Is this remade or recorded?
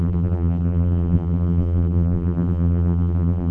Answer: remade